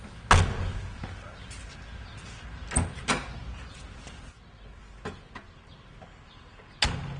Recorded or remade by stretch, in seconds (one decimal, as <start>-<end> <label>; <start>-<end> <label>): 0.0-7.2 recorded

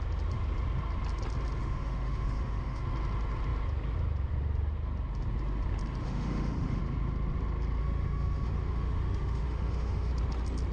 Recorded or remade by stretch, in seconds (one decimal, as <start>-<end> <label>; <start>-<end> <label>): 0.0-1.6 recorded; 1.6-2.8 remade; 2.8-6.0 recorded; 6.0-6.8 remade; 6.8-7.8 recorded; 7.8-10.1 remade; 10.1-10.7 recorded

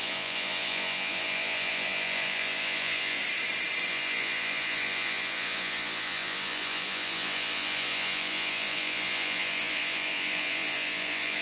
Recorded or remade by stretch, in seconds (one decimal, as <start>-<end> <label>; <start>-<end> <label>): 0.0-3.2 remade; 3.2-3.9 recorded; 3.9-11.4 remade

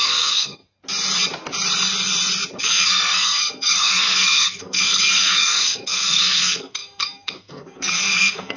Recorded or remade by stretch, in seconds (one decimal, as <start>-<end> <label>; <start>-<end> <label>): 0.0-0.6 remade; 0.6-2.6 recorded; 2.6-8.6 remade

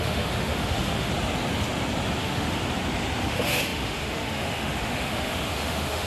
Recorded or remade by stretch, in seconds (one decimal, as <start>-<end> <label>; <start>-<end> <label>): 0.0-1.1 remade; 1.1-2.2 recorded; 2.2-2.6 remade; 2.6-3.2 recorded; 3.2-6.1 remade

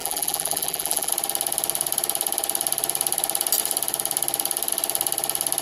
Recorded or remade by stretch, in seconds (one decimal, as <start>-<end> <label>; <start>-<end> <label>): 0.0-1.1 remade; 1.1-5.6 recorded

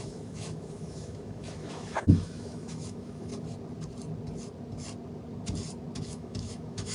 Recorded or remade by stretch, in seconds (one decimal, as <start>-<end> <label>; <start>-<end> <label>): 0.0-3.3 remade; 3.3-6.0 recorded; 6.0-6.9 remade

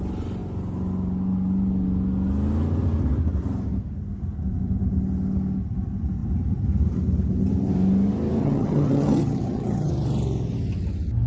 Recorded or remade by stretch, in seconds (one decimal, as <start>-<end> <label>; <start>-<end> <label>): 0.0-8.4 recorded; 8.4-9.9 remade; 9.9-11.3 recorded